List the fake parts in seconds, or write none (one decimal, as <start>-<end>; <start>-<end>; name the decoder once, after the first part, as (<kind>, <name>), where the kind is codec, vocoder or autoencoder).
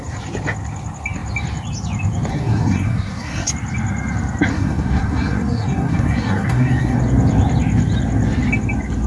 2.3-3.5 (codec, SNAC); 4.5-7.0